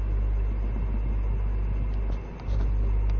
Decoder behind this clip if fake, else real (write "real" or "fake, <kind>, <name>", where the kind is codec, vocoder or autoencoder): real